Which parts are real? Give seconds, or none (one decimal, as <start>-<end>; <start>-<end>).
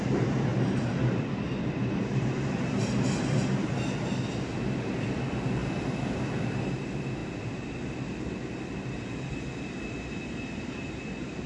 0.0-0.5; 1.2-5.6; 6.7-11.5